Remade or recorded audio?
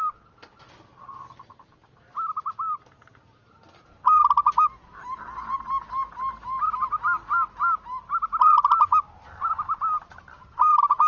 recorded